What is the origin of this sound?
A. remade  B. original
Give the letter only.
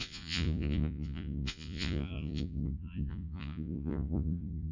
A